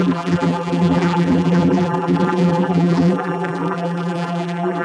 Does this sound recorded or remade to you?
remade